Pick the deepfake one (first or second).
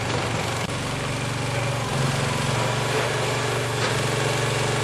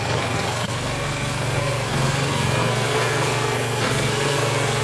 second